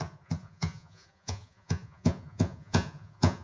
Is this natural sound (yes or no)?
no